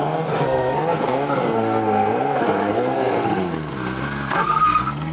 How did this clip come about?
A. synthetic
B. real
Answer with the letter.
A